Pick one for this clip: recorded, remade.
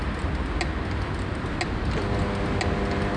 recorded